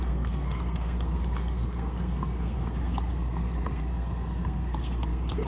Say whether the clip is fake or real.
fake